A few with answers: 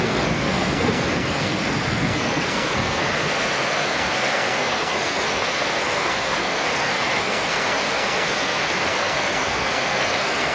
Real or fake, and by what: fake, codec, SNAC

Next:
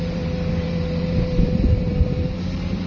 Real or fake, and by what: fake, vocoder, BigVGAN v2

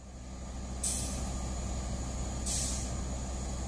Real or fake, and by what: real